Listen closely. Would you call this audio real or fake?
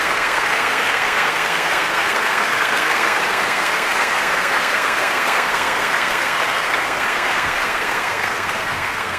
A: fake